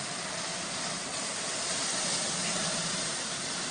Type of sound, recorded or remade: recorded